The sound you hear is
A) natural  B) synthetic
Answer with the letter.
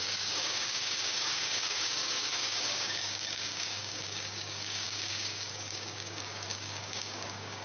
B